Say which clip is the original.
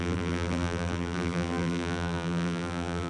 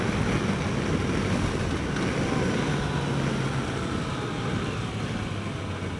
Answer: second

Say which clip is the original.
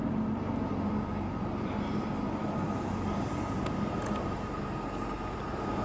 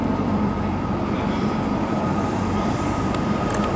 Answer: first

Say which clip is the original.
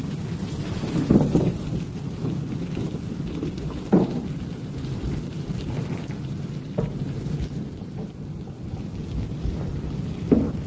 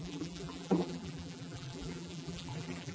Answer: first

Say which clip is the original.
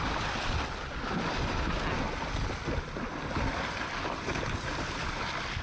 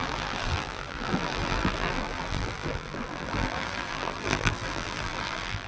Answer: first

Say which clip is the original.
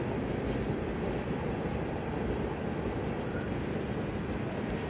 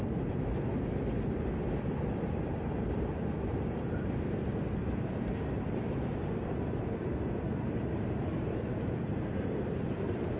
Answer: first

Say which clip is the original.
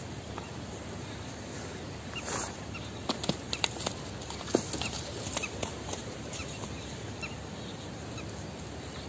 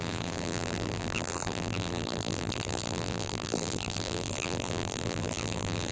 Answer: first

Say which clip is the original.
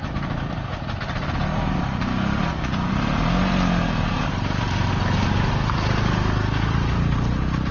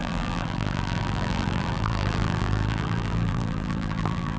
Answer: first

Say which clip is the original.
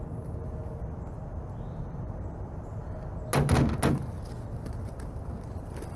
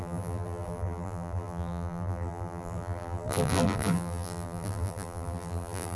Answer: first